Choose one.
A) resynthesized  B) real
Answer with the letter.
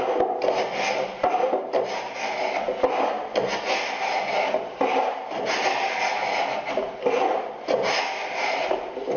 B